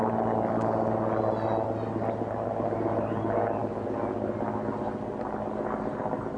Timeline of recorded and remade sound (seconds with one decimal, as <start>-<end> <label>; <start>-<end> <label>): 0.0-6.4 recorded

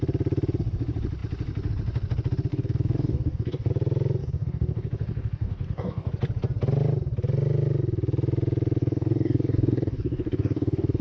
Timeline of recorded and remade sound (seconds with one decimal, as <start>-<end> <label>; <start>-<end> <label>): 0.0-2.5 recorded; 2.5-3.7 remade; 3.7-4.2 recorded; 4.2-6.1 remade; 6.1-8.8 recorded; 8.8-11.0 remade

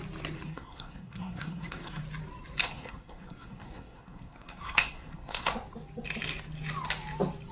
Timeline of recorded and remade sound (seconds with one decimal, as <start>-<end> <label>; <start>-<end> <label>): 0.0-0.5 recorded; 0.5-2.0 remade; 2.0-2.6 recorded; 2.6-5.5 remade; 5.5-7.5 recorded

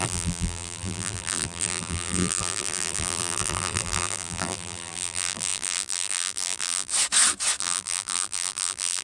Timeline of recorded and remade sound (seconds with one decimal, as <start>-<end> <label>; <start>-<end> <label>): 0.0-6.9 remade; 6.9-7.6 recorded; 7.6-9.0 remade